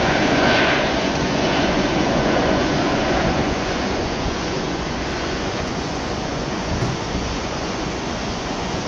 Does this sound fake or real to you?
fake